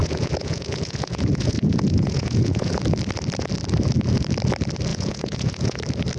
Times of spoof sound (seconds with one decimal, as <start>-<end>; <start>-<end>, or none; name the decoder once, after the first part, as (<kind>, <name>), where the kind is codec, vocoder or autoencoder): 0.0-2.7 (vocoder, Vocos); 4.9-5.8